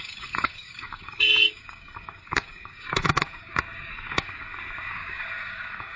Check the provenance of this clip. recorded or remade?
remade